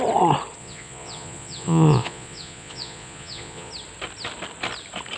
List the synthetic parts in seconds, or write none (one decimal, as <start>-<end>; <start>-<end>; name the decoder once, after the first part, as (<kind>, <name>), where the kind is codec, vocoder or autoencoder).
0.6-3.7 (vocoder, Vocos)